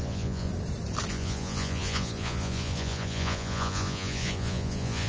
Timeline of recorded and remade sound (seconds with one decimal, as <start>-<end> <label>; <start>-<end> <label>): 0.0-0.5 remade; 0.5-1.1 recorded; 1.1-5.1 remade